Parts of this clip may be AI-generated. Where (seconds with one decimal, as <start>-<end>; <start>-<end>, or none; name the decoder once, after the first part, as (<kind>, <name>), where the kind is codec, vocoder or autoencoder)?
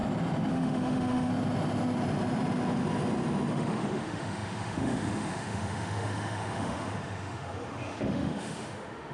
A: 0.5-1.3 (autoencoder, DAC-VAE); 3.5-9.1